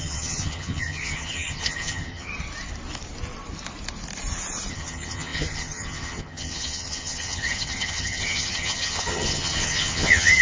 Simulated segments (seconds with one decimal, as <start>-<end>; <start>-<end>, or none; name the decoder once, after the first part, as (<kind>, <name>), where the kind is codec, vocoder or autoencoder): 0.0-2.3 (vocoder, HiFi-GAN); 4.7-10.4